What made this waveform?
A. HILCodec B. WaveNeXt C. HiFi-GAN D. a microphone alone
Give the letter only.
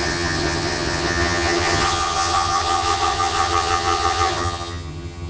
C